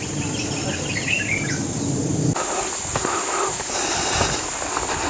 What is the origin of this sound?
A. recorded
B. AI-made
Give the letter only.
A